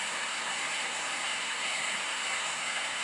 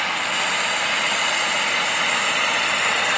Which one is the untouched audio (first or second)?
second